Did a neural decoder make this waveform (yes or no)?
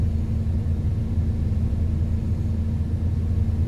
no